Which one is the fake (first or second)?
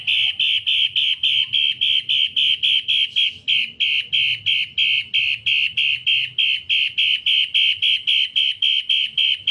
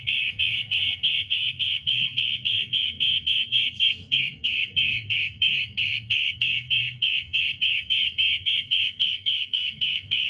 second